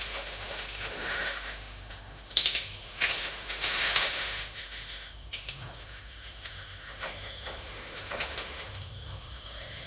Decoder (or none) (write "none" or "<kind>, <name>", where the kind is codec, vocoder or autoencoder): autoencoder, DAC-VAE